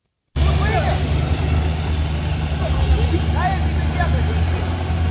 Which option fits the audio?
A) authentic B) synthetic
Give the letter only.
A